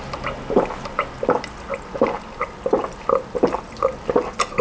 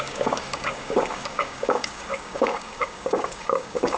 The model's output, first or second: second